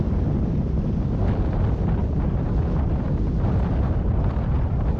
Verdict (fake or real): real